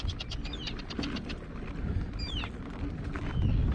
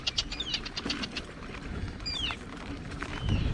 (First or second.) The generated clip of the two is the second